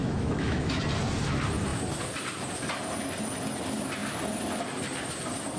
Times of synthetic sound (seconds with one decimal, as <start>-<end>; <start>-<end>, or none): 0.0-0.8